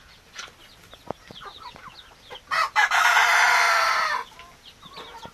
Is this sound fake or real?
real